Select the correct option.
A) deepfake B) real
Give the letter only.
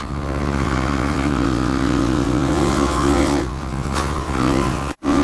A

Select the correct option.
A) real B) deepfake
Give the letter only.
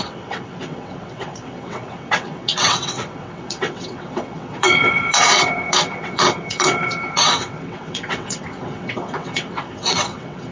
B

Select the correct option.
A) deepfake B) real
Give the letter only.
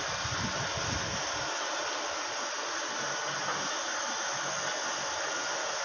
B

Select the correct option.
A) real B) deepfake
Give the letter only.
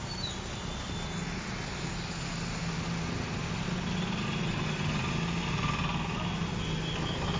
A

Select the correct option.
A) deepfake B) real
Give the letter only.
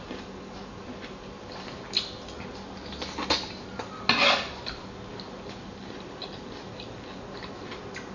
B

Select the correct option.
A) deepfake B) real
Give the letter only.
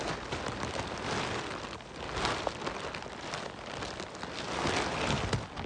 B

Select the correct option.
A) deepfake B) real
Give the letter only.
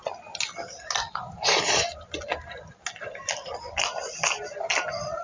B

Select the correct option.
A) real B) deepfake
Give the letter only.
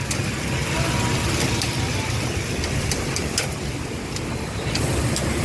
A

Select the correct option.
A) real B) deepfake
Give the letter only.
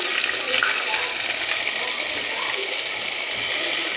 A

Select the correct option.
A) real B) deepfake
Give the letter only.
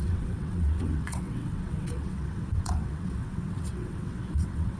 B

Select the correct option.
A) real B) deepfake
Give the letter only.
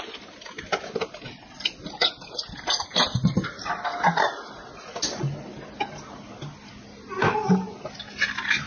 A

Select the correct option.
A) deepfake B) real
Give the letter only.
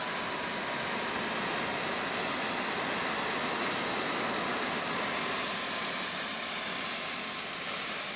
B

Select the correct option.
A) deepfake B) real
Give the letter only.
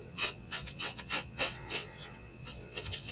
A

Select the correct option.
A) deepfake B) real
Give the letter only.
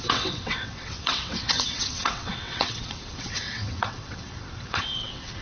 A